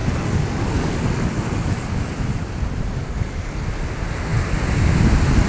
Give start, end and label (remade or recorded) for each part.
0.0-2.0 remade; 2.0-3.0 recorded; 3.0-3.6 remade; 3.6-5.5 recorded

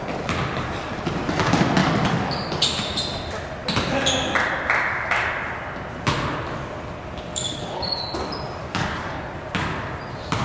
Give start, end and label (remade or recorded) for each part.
0.0-1.8 recorded; 1.8-2.5 remade; 2.5-7.3 recorded; 7.3-7.8 remade; 7.8-8.6 recorded; 8.6-9.4 remade; 9.4-10.4 recorded

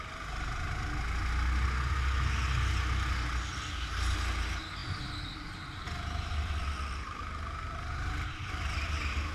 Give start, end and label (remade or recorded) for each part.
0.0-9.3 recorded